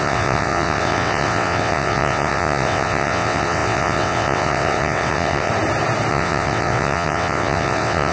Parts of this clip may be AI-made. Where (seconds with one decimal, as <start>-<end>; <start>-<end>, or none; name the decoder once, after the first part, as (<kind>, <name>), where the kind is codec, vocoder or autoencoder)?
0.0-5.5 (vocoder, WaveNeXt); 6.1-8.1